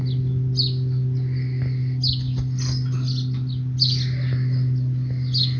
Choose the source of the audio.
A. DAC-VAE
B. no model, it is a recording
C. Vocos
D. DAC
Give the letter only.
B